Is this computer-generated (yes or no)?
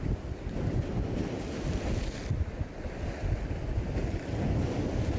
no